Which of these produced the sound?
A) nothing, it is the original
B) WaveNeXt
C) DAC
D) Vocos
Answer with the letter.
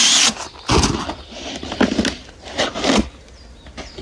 A